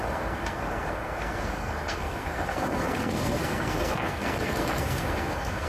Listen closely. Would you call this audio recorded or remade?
remade